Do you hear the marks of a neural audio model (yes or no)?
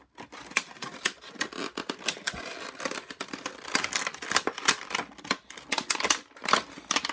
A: no